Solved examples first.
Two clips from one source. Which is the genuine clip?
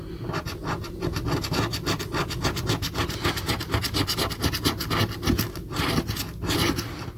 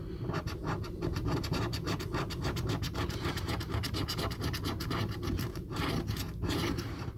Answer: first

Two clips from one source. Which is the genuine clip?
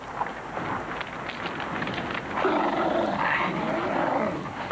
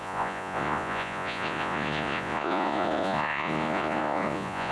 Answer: first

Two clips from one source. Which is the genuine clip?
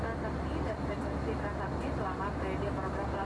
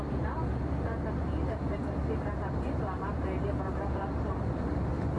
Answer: first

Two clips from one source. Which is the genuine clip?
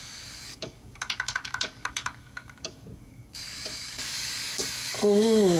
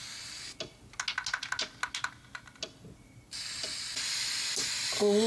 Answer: second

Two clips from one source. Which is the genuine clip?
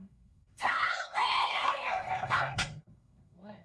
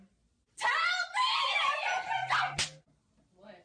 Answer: second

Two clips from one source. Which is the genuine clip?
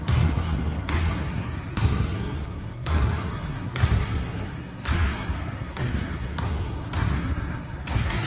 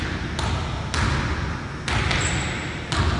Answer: second